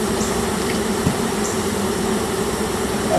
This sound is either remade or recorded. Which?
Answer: remade